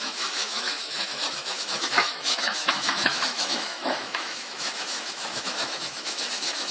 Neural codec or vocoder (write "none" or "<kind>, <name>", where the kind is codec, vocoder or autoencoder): autoencoder, DAC-VAE